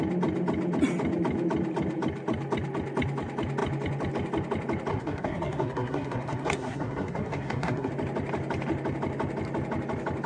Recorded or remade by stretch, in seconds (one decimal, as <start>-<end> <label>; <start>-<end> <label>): 0.0-4.9 recorded; 4.9-7.9 remade; 7.9-10.3 recorded